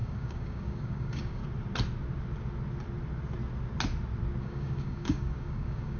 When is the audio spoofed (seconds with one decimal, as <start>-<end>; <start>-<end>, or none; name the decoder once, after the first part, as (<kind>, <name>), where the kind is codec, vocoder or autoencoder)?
0.0-1.4 (codec, DAC); 4.4-6.0